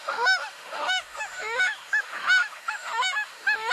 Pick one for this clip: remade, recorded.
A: remade